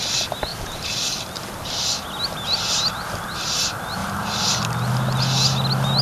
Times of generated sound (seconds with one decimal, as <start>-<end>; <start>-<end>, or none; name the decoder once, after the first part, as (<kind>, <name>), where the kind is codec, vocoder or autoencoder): 0.5-1.7 (vocoder, BigVGAN v2); 4.0-4.5